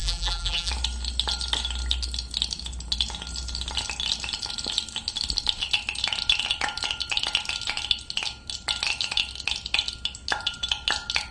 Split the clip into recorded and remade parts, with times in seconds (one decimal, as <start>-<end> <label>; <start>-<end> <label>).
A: 0.0-0.7 remade; 0.7-11.3 recorded